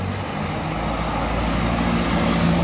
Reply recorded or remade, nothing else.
recorded